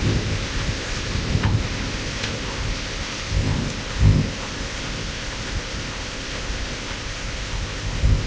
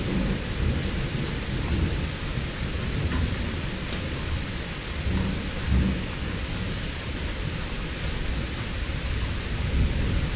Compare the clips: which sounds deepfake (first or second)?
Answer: first